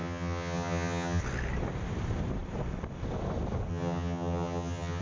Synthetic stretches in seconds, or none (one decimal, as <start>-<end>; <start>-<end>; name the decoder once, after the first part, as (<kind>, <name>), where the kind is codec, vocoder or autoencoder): 0.0-1.2 (vocoder, HiFi-GAN); 3.7-5.0